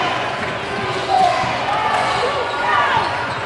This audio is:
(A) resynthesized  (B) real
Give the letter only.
A